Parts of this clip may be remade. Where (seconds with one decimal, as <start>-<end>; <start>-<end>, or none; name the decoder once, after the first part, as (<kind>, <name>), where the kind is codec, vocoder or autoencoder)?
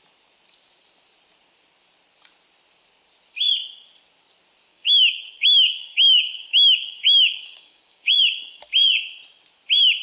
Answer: 4.7-8.6 (codec, DAC)